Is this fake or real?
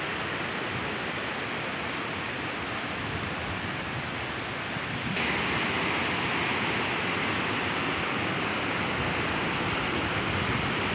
real